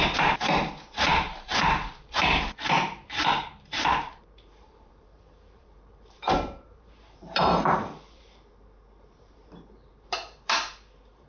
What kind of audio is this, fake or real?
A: fake